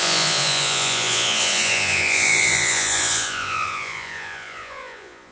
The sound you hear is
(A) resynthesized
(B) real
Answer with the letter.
A